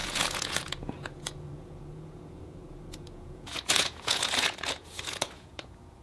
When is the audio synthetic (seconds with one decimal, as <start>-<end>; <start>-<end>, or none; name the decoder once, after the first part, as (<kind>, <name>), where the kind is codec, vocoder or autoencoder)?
0.0-6.0 (vocoder, Vocos)